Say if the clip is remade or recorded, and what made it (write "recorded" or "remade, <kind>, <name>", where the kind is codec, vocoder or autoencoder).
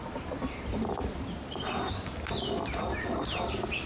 recorded